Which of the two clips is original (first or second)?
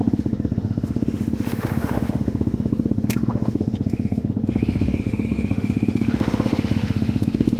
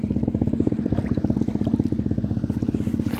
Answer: second